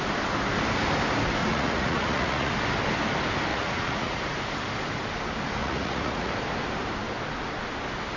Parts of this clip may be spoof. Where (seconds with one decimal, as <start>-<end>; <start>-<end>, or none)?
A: 1.4-2.5; 3.5-4.2; 5.6-6.3